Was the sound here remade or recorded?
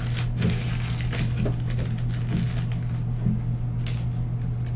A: recorded